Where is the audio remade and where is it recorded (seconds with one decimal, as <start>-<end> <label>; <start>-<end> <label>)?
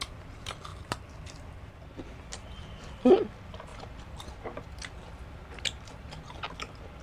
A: 0.0-7.0 recorded